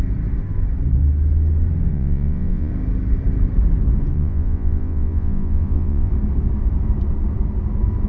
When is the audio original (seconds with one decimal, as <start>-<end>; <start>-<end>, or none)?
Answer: 0.0-1.9; 2.7-4.1; 6.1-8.1